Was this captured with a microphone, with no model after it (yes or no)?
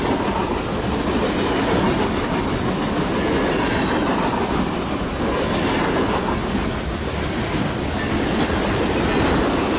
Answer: yes